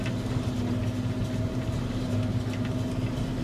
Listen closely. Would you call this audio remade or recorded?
recorded